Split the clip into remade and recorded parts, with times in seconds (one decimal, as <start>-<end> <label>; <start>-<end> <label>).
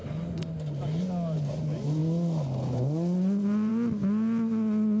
0.0-5.0 recorded